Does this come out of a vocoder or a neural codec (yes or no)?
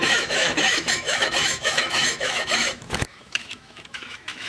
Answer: yes